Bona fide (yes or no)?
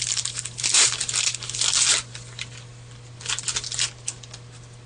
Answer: yes